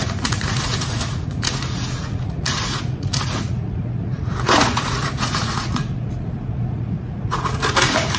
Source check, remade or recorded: remade